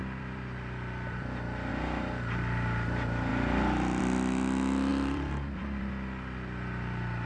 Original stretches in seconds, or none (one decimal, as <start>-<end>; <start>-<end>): 1.7-4.9; 5.9-7.3